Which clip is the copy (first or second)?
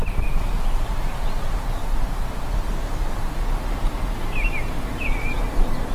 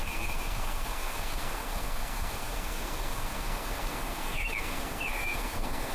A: second